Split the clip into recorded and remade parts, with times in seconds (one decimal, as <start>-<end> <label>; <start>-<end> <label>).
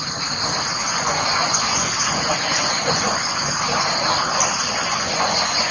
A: 0.0-0.8 recorded; 0.8-3.5 remade; 3.5-4.8 recorded; 4.8-5.7 remade